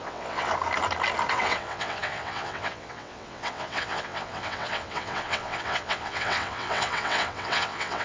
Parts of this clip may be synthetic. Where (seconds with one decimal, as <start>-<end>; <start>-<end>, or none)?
0.0-0.5; 1.3-8.0